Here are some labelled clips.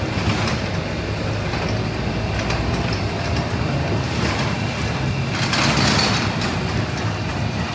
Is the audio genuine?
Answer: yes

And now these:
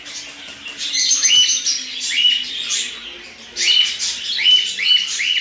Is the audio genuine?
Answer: yes